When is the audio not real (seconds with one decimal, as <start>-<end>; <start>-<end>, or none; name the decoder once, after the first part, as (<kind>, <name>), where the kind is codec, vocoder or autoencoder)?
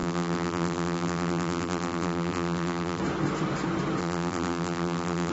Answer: 0.0-3.0 (vocoder, BigVGAN v2); 4.0-5.3